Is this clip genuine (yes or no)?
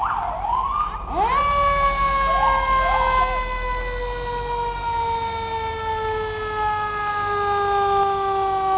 yes